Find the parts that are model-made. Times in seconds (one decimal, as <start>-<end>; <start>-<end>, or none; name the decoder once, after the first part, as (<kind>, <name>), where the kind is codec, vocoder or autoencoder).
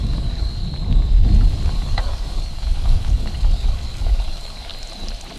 0.0-0.6 (codec, DAC); 1.7-4.7